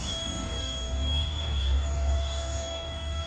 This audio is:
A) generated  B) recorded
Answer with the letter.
A